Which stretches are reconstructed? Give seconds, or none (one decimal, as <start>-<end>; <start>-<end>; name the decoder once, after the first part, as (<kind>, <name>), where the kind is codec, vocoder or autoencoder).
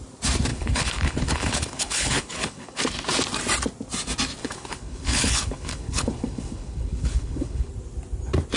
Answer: 0.5-2.8 (codec, HILCodec); 4.4-7.7